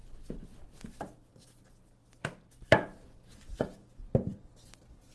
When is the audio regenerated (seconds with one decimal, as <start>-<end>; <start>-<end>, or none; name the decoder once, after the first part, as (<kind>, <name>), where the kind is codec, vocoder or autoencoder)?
none